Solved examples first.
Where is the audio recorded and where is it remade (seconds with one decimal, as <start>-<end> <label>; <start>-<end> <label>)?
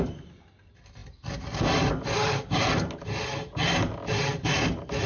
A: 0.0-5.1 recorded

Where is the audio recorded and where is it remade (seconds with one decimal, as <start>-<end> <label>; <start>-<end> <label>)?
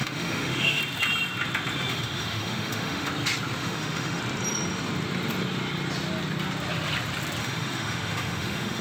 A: 0.0-0.8 remade; 0.8-1.9 recorded; 1.9-3.1 remade; 3.1-3.6 recorded; 3.6-4.2 remade; 4.2-7.4 recorded; 7.4-8.8 remade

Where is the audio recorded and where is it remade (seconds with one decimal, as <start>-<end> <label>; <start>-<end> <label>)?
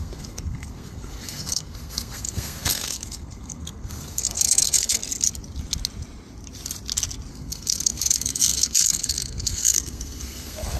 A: 0.0-5.0 remade; 5.0-7.3 recorded; 7.3-10.8 remade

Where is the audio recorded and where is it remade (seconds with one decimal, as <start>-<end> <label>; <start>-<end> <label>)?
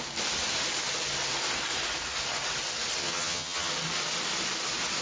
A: 0.0-3.0 recorded; 3.0-3.7 remade; 3.7-5.0 recorded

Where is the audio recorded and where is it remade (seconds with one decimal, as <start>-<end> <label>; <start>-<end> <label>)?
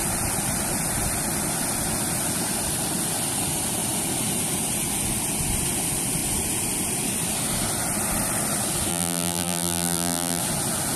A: 0.0-8.9 recorded; 8.9-10.4 remade; 10.4-11.0 recorded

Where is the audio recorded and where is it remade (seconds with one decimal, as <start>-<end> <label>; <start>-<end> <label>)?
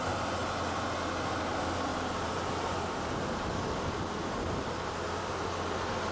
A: 0.0-1.9 recorded; 1.9-5.2 remade; 5.2-6.1 recorded